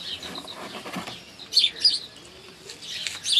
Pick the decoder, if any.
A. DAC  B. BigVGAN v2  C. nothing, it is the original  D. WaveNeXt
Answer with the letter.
C